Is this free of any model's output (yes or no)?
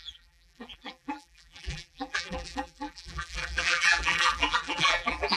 no